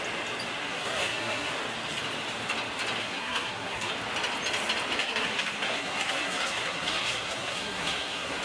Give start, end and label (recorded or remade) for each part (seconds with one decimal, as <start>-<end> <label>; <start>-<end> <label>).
0.0-0.6 recorded; 0.6-1.5 remade; 1.5-3.0 recorded; 3.0-3.9 remade; 3.9-5.0 recorded; 5.0-8.4 remade